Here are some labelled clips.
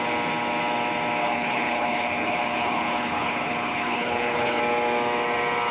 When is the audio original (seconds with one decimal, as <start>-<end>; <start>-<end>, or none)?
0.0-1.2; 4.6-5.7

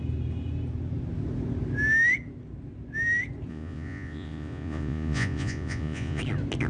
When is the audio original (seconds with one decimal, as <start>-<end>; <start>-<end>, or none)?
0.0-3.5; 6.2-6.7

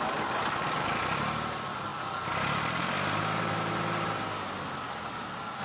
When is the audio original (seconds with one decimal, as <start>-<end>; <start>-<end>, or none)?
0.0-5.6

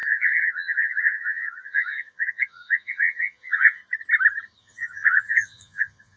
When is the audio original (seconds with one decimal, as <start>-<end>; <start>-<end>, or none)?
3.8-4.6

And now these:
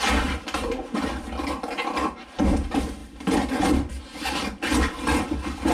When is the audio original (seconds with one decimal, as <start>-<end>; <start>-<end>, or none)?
0.0-5.7

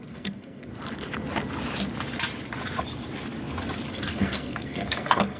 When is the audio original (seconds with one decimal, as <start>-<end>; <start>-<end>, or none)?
0.7-3.9

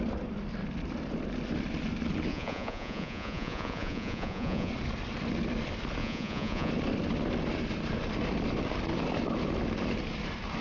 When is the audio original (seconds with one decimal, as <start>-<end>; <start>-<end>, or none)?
0.0-2.3; 4.7-6.0; 6.7-10.6